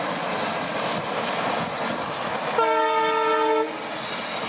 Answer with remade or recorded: recorded